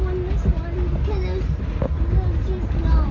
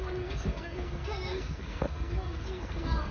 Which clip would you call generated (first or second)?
second